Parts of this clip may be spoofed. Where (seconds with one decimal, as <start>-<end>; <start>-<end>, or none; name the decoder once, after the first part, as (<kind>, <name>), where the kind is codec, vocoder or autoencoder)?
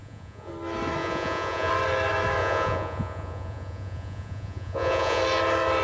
0.0-0.5 (vocoder, Vocos); 1.0-1.7; 2.4-5.2